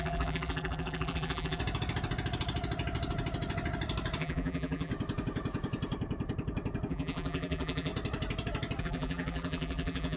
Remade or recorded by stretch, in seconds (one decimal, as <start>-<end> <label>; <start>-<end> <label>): 0.0-1.6 remade; 1.6-4.2 recorded; 4.2-4.9 remade; 4.9-6.9 recorded; 6.9-7.9 remade; 7.9-8.8 recorded; 8.8-10.2 remade